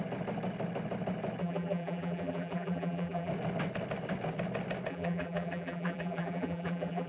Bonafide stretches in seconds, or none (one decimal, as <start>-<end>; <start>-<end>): 0.0-1.4; 3.3-4.9